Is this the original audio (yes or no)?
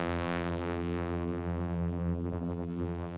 no